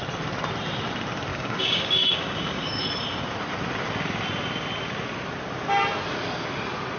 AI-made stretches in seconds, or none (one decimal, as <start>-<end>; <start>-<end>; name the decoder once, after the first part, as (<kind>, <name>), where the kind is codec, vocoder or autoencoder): 1.3-2.8 (codec, DAC)